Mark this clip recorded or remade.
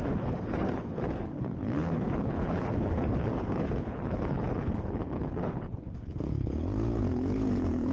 remade